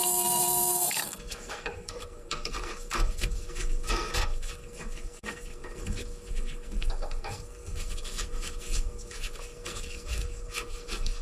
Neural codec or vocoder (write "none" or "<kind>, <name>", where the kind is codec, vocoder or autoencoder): codec, SNAC